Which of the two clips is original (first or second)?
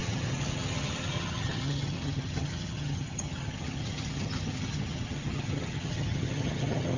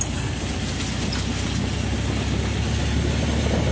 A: second